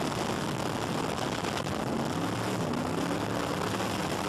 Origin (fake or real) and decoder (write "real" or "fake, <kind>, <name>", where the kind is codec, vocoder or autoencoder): real